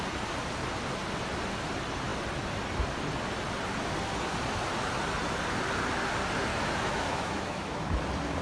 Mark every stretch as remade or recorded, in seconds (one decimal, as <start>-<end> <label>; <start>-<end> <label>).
0.0-6.5 recorded; 6.5-8.0 remade; 8.0-8.4 recorded